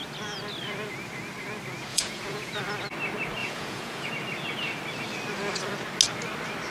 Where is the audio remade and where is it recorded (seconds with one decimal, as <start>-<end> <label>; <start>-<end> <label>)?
0.0-1.9 recorded; 1.9-2.6 remade; 2.6-3.4 recorded; 3.4-4.1 remade; 4.1-6.7 recorded